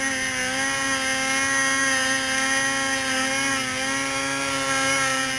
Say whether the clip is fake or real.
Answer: real